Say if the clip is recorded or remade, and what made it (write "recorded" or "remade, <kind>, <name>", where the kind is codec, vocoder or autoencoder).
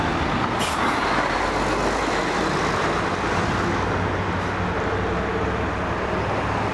recorded